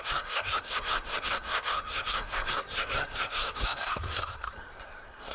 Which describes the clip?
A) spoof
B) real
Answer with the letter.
A